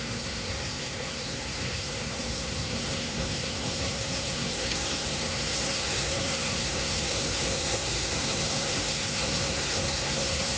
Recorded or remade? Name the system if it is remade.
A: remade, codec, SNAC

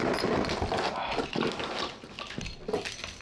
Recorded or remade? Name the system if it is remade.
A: recorded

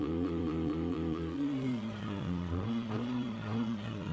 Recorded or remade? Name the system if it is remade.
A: remade, vocoder, Vocos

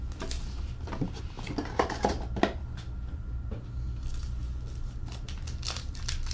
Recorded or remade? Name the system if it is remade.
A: recorded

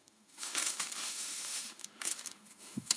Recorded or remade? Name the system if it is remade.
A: remade, autoencoder, DAC-VAE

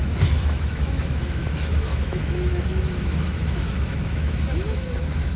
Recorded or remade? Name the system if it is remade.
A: remade, autoencoder, DAC-VAE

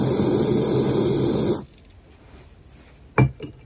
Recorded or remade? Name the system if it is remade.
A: recorded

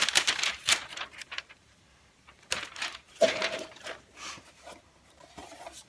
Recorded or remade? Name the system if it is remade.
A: remade, vocoder, BigVGAN v2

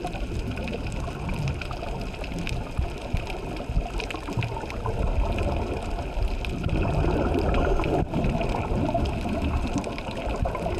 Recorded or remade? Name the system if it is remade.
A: recorded